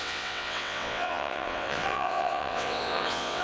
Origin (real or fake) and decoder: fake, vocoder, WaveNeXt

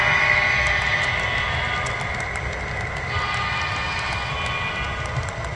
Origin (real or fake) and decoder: real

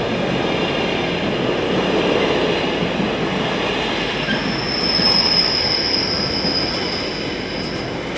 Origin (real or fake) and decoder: real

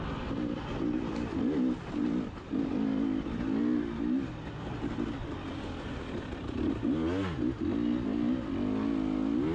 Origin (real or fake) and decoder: real